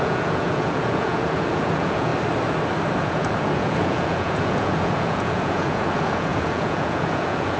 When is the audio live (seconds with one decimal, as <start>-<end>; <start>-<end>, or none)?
2.1-3.0